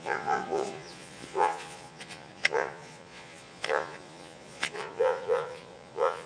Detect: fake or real fake